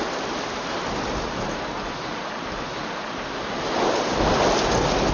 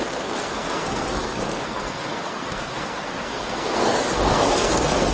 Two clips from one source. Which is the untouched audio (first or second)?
first